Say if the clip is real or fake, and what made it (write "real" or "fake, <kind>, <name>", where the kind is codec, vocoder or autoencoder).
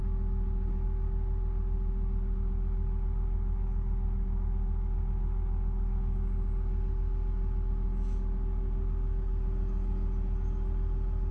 real